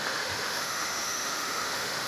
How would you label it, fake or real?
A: fake